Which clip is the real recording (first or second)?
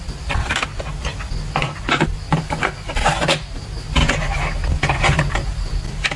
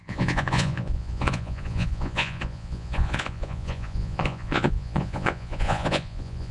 first